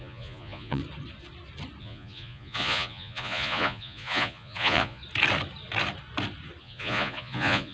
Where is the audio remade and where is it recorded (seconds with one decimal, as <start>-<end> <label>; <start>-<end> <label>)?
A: 0.0-0.8 remade; 0.8-1.8 recorded; 1.8-5.0 remade; 5.0-6.6 recorded; 6.6-7.7 remade